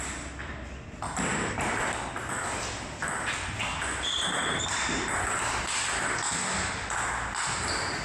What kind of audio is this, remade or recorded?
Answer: recorded